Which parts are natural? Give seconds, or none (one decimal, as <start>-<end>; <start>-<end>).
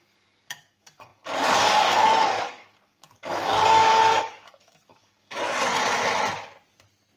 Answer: 5.7-7.2